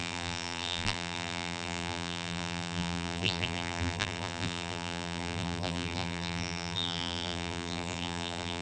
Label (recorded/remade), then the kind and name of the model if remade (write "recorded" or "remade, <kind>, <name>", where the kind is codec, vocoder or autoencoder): remade, vocoder, BigVGAN v2